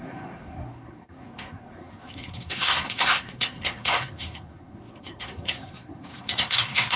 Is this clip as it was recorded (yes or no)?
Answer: no